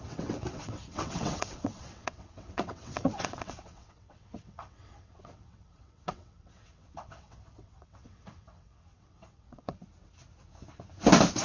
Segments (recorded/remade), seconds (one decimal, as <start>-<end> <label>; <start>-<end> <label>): 0.0-9.8 remade; 9.8-11.4 recorded